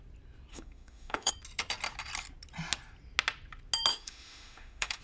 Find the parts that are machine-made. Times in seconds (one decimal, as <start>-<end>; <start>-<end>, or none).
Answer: 0.5-1.3; 3.9-5.0